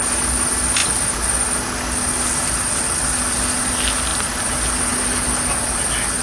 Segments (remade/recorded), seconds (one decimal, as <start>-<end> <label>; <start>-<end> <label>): 0.0-6.2 recorded